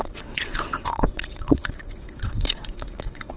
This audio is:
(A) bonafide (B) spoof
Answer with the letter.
B